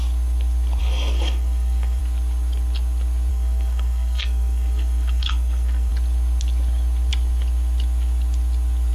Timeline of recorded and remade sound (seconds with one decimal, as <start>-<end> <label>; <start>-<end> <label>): 0.0-0.8 recorded; 0.8-2.0 remade; 2.0-3.3 recorded; 3.3-5.9 remade; 5.9-8.9 recorded